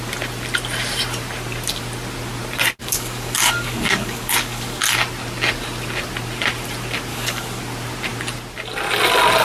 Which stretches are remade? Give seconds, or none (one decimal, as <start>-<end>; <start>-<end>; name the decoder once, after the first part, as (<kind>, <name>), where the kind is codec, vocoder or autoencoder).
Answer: 2.8-4.8 (codec, DAC); 7.1-7.6